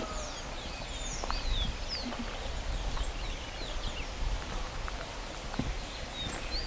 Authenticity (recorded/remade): recorded